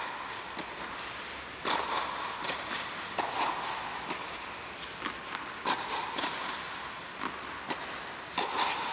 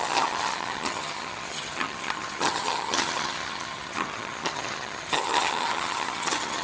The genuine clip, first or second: first